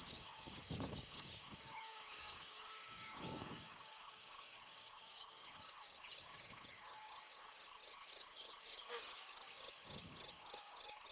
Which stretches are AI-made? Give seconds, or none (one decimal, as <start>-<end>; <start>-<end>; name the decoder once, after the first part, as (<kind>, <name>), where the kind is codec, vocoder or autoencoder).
0.0-11.1 (codec, DAC)